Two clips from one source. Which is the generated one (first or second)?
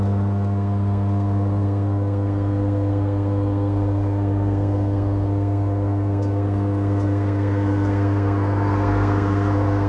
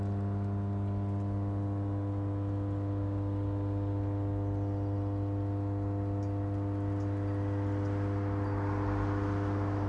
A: first